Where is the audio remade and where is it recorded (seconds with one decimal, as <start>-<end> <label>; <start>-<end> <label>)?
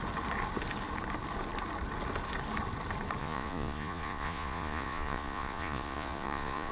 0.0-3.2 recorded; 3.2-6.7 remade